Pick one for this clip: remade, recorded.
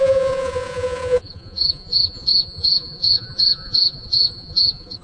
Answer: remade